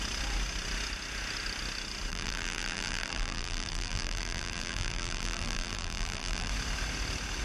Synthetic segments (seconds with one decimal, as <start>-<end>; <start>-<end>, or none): 2.1-6.5